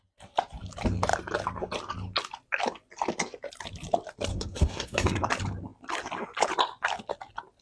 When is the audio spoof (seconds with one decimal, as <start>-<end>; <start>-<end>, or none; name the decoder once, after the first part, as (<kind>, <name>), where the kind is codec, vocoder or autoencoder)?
4.3-5.3 (codec, SNAC)